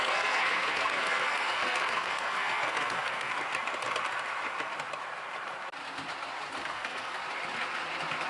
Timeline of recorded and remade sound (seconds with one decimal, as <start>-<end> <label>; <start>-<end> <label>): 0.0-3.3 remade; 3.3-6.6 recorded; 6.6-7.2 remade; 7.2-8.3 recorded